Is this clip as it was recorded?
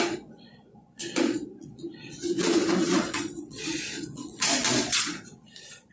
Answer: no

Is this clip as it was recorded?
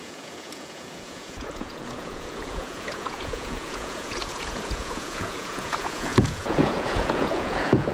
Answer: no